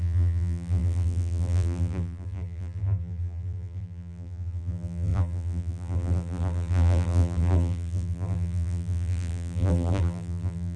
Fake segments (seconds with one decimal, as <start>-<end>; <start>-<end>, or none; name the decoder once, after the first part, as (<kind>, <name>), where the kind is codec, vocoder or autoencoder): 0.0-10.8 (vocoder, BigVGAN v2)

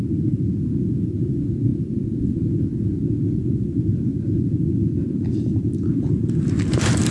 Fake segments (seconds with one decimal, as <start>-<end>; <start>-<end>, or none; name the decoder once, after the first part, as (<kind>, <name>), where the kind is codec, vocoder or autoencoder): none

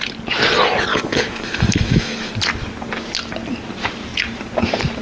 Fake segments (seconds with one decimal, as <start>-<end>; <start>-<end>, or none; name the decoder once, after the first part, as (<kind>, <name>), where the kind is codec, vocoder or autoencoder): 0.9-2.3 (autoencoder, DAC-VAE)

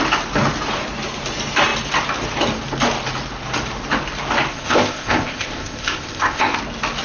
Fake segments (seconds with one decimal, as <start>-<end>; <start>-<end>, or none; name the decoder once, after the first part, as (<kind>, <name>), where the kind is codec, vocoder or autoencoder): 4.5-6.6 (codec, ZipCodec)

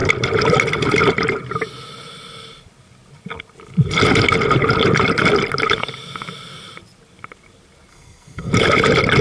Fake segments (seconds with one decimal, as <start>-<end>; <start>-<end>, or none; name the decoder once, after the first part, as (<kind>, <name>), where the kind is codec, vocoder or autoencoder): 7.9-8.5 (codec, SNAC)

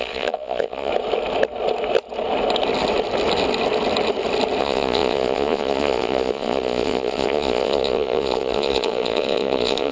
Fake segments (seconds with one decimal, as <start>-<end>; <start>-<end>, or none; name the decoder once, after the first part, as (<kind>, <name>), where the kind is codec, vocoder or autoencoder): 0.0-0.9 (vocoder, Vocos); 4.6-9.9

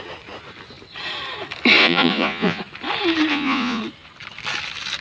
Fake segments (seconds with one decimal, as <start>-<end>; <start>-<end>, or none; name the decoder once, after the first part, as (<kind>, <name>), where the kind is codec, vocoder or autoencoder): 1.8-2.6 (vocoder, Vocos); 3.3-3.8

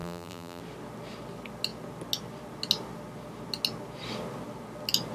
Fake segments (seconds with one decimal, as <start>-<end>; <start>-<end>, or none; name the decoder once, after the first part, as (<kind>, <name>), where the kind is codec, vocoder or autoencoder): 0.0-0.6 (vocoder, BigVGAN v2)